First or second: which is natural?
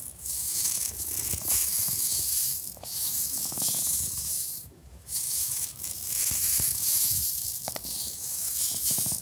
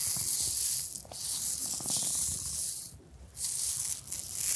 second